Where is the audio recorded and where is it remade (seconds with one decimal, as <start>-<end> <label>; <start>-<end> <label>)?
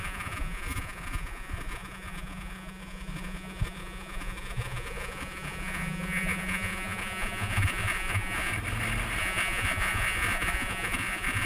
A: 0.0-8.5 remade; 8.5-9.2 recorded; 9.2-11.5 remade